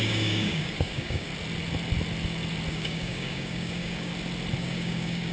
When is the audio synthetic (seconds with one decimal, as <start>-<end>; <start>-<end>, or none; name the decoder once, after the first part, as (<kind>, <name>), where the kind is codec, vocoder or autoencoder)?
0.0-1.3 (codec, DAC); 2.7-4.1; 4.6-5.3